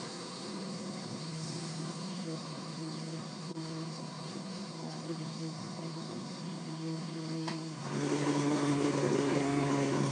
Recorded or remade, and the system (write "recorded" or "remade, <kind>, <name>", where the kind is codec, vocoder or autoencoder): remade, codec, SNAC